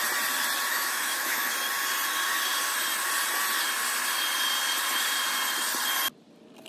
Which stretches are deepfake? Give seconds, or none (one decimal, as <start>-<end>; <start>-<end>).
0.7-1.5